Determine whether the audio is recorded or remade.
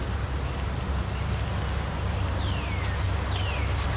recorded